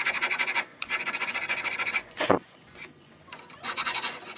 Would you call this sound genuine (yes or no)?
no